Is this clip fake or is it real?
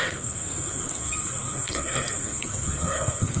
fake